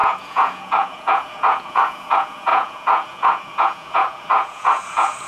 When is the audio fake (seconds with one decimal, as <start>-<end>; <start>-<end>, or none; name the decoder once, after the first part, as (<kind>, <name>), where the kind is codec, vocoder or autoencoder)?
0.0-5.3 (vocoder, Vocos)